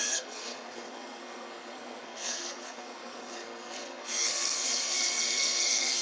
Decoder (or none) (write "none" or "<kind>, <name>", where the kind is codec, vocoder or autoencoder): codec, SNAC